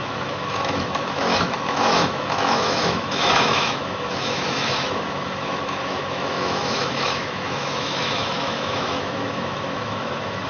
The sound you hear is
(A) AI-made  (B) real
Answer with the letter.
A